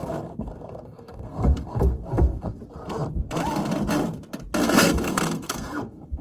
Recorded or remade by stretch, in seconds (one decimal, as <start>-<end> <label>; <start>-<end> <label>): 0.0-2.6 remade; 2.6-4.6 recorded; 4.6-6.2 remade